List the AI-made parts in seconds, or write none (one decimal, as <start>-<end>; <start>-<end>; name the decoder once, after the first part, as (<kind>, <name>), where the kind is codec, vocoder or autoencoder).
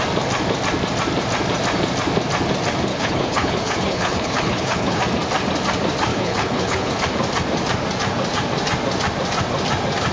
2.9-5.0 (codec, HILCodec); 6.1-6.9